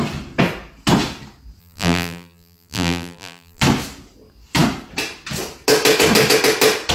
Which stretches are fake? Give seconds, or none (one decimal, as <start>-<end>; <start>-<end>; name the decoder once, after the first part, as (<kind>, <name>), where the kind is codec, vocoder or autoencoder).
1.6-3.6 (vocoder, BigVGAN v2)